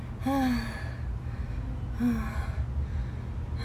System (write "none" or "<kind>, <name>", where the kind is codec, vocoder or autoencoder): none